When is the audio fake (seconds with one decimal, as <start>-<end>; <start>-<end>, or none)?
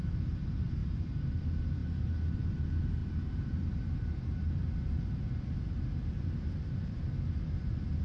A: 0.8-1.4; 3.0-7.0